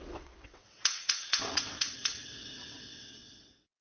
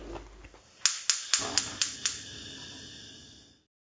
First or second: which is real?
second